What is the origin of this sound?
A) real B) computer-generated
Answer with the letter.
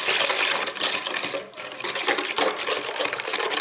A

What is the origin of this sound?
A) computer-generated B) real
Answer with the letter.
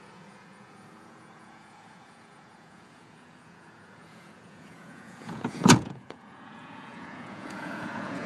A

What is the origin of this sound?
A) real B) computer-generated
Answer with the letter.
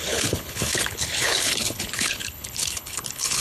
B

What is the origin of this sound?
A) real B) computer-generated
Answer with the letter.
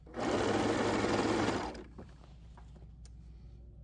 A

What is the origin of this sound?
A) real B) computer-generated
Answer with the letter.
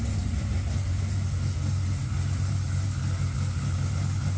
A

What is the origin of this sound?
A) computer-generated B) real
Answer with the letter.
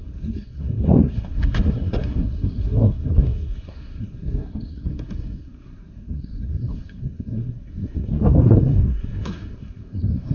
A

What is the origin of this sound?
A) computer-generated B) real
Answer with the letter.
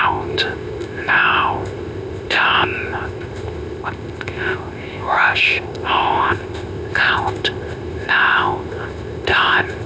A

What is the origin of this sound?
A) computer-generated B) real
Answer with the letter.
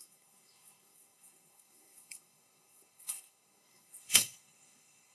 A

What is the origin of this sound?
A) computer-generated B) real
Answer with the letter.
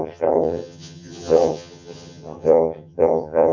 A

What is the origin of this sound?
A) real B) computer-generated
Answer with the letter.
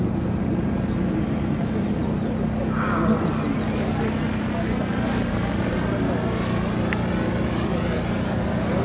A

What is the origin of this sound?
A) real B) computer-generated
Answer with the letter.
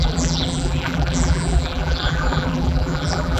B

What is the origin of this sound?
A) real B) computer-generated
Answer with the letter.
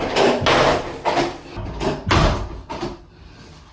A